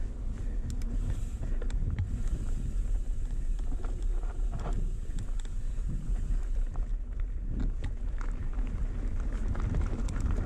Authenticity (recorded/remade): remade